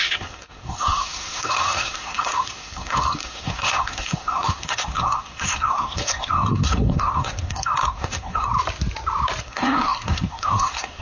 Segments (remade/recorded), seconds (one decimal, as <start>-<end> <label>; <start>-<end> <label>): 0.0-8.5 remade; 8.5-9.4 recorded; 9.4-11.0 remade